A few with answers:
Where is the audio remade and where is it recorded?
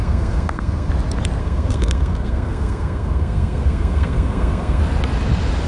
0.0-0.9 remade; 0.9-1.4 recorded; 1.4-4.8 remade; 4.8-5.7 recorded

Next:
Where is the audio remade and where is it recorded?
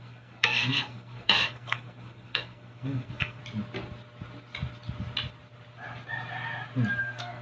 0.0-3.4 remade; 3.4-7.0 recorded; 7.0-7.4 remade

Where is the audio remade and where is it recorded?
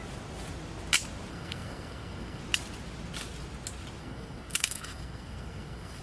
0.0-1.3 recorded; 1.3-2.4 remade; 2.4-4.0 recorded; 4.0-6.0 remade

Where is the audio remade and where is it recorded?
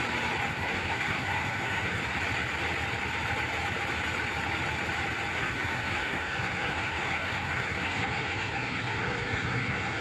0.0-0.5 recorded; 0.5-2.0 remade; 2.0-5.3 recorded; 5.3-10.0 remade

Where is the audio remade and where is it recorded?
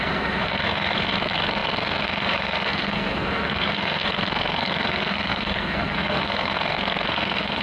0.0-7.6 remade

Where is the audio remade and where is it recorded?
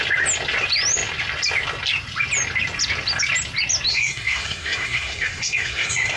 0.0-3.9 recorded; 3.9-6.2 remade